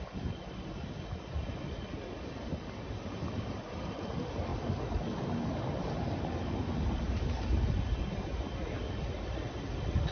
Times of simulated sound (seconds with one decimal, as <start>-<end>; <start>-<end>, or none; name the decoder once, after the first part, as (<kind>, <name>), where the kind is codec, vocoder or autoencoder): none